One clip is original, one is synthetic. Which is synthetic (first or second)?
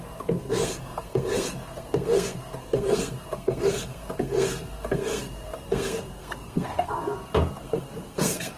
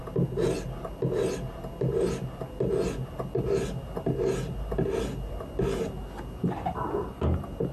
first